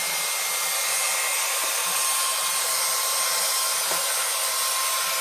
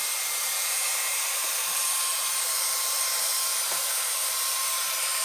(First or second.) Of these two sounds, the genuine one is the first